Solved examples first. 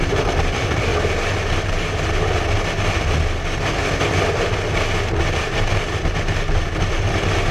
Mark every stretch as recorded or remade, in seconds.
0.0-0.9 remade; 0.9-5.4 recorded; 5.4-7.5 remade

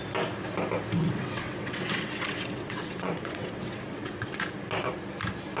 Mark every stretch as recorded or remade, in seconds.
0.0-1.0 recorded; 1.0-4.4 remade; 4.4-5.6 recorded